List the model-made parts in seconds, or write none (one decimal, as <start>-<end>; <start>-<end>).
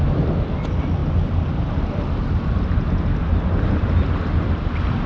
none